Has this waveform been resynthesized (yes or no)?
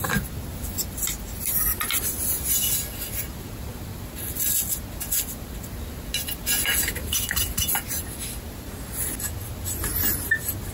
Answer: no